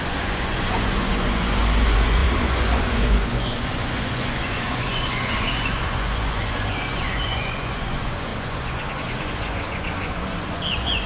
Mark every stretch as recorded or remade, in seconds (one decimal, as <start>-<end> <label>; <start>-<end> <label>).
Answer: 0.0-11.1 remade